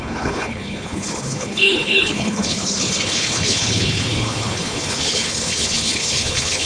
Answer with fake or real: fake